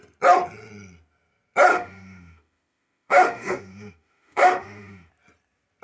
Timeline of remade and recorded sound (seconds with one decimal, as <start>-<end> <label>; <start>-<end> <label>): 0.0-1.7 recorded; 1.7-5.1 remade; 5.1-5.8 recorded